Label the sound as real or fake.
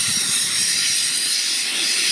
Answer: real